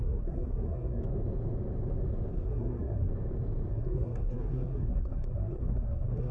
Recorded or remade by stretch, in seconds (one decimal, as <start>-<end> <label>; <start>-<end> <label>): 0.0-1.0 remade; 1.0-2.3 recorded; 2.3-3.1 remade; 3.1-3.7 recorded; 3.7-6.3 remade